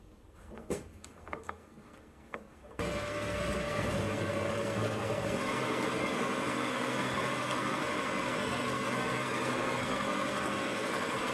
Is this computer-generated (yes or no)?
yes